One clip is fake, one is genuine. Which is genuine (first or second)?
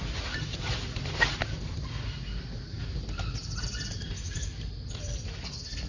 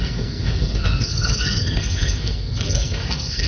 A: first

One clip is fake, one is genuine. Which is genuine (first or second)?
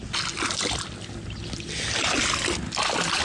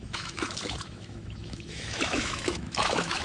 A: first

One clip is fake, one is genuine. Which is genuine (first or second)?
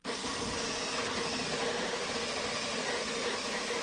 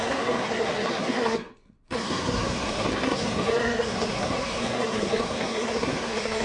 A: first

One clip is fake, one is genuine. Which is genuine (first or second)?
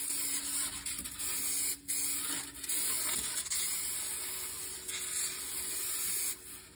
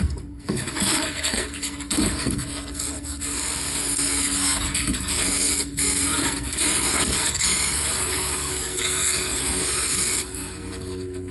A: first